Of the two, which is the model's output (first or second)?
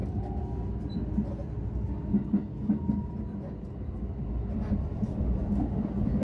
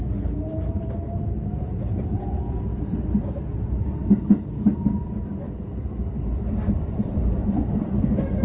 second